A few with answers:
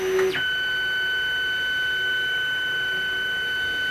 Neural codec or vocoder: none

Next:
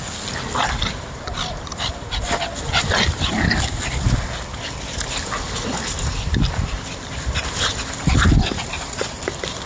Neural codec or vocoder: vocoder, BigVGAN v2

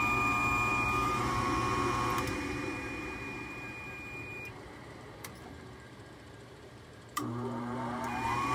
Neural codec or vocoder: vocoder, BigVGAN v2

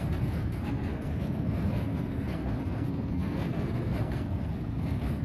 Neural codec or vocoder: codec, SNAC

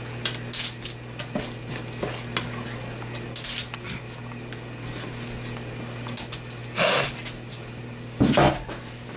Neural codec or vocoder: none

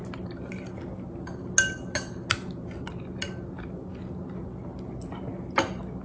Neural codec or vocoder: none